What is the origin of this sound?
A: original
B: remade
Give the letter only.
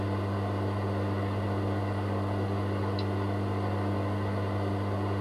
A